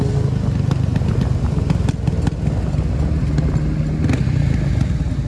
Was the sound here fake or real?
real